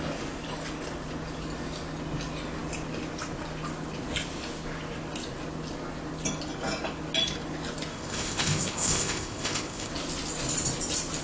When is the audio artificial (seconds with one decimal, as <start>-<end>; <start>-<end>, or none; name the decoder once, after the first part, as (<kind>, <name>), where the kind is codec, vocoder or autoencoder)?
7.9-9.9 (codec, ZipCodec)